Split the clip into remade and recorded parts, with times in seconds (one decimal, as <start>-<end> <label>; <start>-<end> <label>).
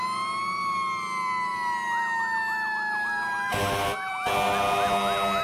0.0-5.4 recorded